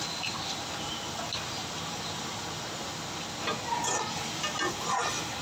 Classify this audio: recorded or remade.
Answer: recorded